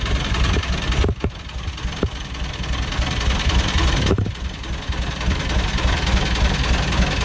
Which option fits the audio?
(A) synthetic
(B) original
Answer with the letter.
B